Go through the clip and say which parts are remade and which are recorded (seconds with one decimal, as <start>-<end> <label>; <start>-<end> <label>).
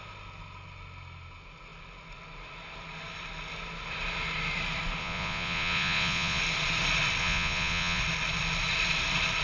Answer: 0.0-5.0 recorded; 5.0-6.4 remade; 6.4-7.2 recorded; 7.2-8.0 remade; 8.0-9.4 recorded